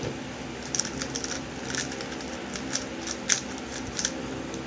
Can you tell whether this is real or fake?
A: real